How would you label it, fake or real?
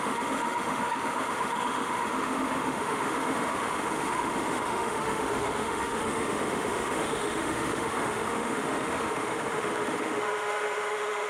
fake